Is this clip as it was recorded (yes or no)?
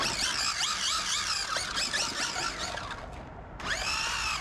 yes